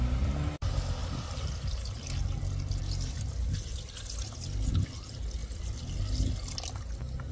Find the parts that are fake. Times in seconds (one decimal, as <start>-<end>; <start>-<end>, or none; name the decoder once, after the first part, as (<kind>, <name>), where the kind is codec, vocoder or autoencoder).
none